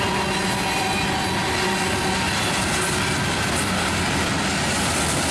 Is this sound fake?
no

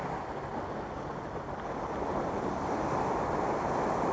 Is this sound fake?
no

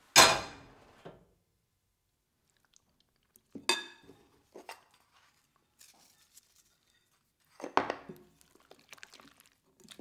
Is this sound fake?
no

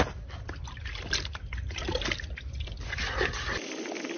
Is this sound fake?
no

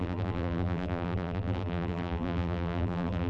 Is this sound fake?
yes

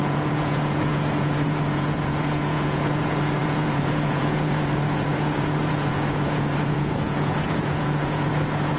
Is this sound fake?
yes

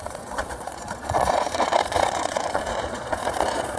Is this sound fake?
yes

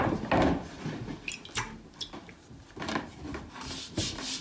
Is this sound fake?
no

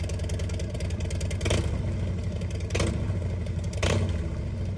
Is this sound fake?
no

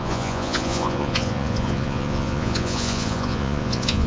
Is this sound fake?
yes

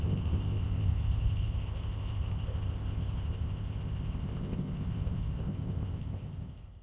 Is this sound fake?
yes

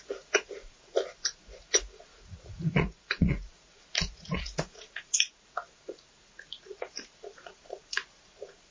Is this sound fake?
yes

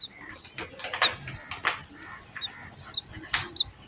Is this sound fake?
no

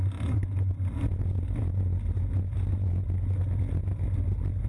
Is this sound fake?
no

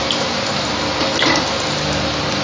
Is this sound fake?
yes